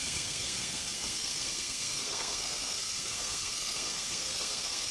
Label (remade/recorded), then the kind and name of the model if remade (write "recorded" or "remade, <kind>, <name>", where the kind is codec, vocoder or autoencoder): remade, codec, SNAC